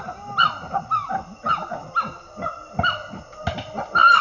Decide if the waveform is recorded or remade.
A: recorded